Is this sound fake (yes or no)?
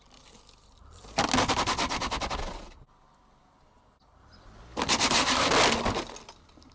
no